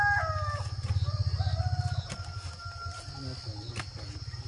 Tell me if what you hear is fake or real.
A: real